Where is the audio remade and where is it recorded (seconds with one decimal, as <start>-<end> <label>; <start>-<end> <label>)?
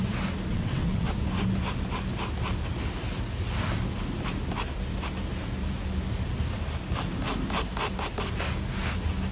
0.0-0.5 recorded; 0.5-1.1 remade; 1.1-9.3 recorded